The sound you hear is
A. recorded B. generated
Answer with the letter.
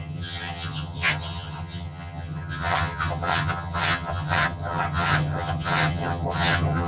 B